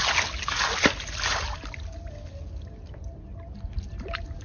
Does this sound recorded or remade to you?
recorded